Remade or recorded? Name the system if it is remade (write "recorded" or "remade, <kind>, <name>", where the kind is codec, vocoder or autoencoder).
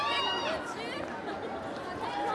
recorded